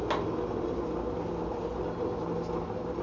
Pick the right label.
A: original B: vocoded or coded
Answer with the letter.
A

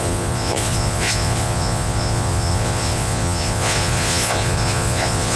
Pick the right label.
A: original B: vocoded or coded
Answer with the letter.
B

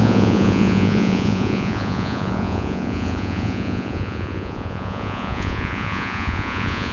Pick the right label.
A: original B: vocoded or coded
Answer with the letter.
B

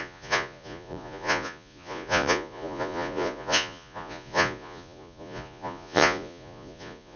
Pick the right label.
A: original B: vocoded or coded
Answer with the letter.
B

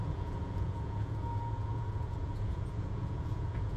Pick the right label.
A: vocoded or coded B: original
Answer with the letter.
A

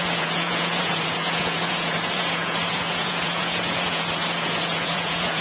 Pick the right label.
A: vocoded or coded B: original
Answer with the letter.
A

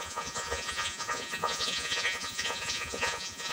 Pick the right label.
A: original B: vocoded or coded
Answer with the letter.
B